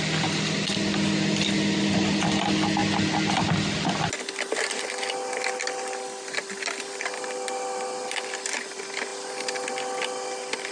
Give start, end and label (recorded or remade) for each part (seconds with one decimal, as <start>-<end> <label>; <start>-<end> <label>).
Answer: 0.0-10.7 recorded